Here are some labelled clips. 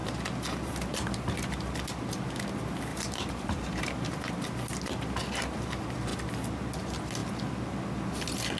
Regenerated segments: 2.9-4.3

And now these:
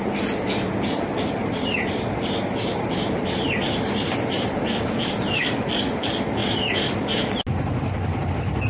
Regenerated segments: 1.4-5.7; 6.4-7.4

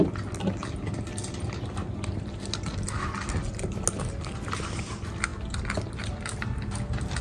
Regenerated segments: 0.0-0.6; 4.0-5.3; 6.2-7.2

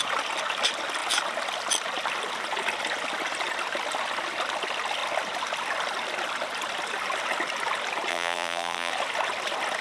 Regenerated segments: 8.1-8.9

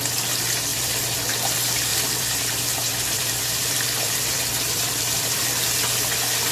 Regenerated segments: 0.7-1.3; 1.9-5.4

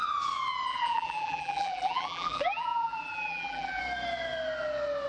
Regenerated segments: 0.7-3.8